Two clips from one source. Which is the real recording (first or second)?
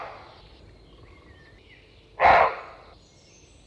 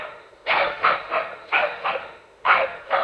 first